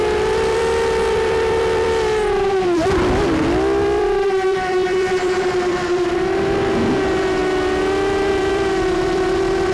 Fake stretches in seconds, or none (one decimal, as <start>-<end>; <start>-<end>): 0.0-7.4; 8.3-9.7